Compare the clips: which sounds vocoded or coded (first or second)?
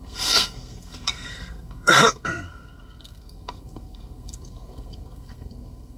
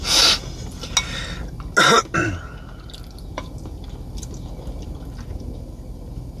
first